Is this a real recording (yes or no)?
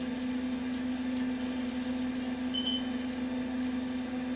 yes